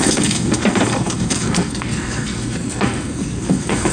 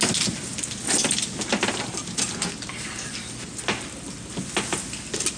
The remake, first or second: first